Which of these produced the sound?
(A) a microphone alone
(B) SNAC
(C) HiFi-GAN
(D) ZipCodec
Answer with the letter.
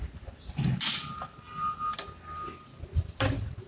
A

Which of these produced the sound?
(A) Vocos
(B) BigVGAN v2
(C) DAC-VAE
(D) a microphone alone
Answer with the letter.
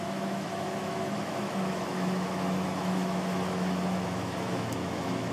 C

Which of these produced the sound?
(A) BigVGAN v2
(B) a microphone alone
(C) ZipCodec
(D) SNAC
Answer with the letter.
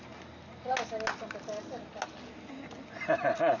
B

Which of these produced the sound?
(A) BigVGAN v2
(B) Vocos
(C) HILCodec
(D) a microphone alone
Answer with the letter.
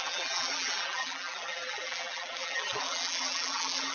A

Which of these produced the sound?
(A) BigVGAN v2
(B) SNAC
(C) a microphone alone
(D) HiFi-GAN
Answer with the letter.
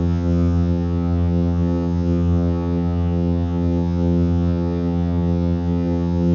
D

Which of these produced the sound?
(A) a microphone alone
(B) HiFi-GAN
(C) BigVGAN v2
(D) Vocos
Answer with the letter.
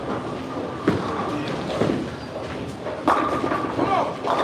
A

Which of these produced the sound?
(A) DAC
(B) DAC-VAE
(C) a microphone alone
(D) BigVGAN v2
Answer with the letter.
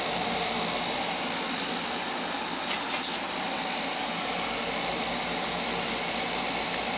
C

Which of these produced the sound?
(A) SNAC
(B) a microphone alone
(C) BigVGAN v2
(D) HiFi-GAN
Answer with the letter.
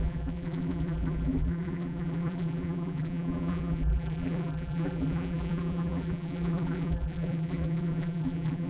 C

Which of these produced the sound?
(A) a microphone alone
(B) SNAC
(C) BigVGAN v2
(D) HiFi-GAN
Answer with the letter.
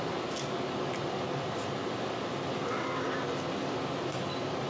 A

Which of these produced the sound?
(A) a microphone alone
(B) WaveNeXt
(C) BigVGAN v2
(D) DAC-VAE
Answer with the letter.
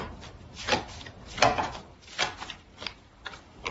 A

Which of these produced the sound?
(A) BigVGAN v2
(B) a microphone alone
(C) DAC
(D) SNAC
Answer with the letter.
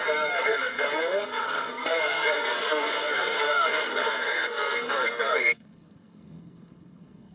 D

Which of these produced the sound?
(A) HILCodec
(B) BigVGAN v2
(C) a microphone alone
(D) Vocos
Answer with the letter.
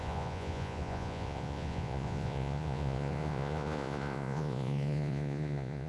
D